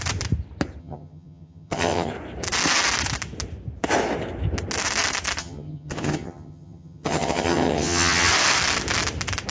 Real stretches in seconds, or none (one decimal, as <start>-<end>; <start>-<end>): 0.0-0.8; 2.1-5.4; 8.3-9.5